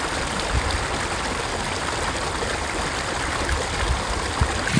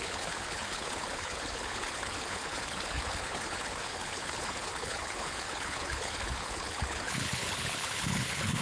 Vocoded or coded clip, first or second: second